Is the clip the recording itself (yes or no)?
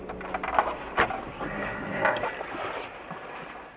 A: yes